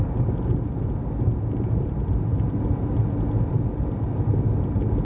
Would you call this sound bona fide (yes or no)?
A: yes